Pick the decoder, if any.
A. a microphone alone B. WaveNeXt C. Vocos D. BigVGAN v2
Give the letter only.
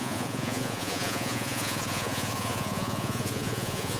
C